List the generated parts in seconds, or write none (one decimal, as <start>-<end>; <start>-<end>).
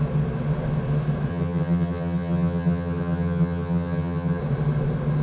1.3-4.4